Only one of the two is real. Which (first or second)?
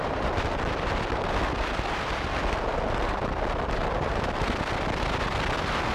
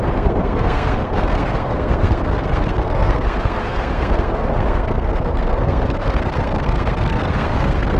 first